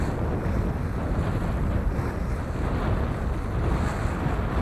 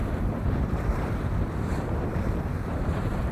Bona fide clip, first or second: first